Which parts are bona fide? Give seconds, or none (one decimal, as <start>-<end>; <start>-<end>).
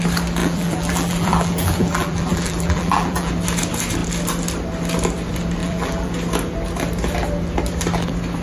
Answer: 0.0-0.4; 3.3-5.6; 6.1-8.4